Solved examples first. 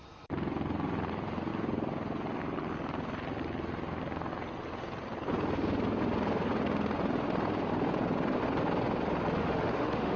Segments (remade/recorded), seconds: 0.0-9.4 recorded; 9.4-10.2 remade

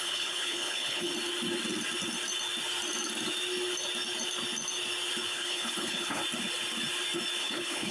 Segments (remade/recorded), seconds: 0.0-1.1 remade; 1.1-5.3 recorded; 5.3-6.2 remade; 6.2-7.4 recorded; 7.4-7.9 remade